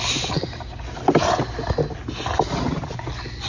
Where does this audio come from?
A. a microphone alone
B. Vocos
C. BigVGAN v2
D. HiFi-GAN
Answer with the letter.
A